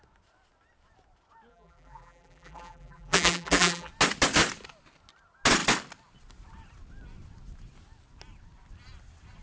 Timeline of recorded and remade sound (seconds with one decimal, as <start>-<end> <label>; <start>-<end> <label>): 0.0-1.5 recorded; 1.5-3.9 remade; 3.9-9.4 recorded